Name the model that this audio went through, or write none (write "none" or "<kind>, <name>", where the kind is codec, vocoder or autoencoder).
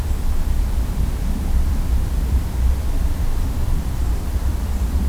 vocoder, BigVGAN v2